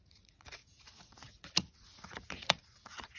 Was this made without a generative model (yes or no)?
no